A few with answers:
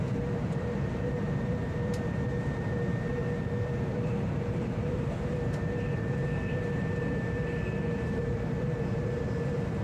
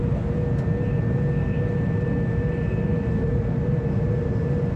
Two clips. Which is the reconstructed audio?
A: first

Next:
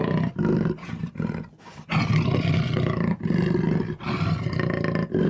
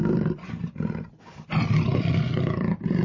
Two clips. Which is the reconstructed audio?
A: second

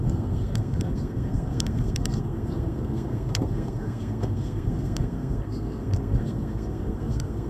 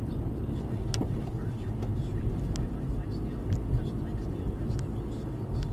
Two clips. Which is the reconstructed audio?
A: first